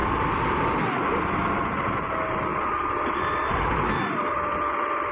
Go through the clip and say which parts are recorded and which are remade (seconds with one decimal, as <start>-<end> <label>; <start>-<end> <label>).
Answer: 0.0-5.1 recorded